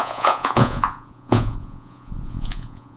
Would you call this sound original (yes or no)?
no